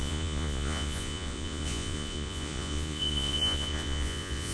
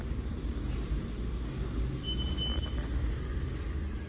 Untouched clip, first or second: second